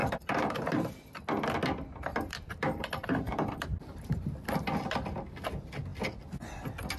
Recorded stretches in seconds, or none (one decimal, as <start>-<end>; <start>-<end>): 0.9-2.1; 4.2-7.0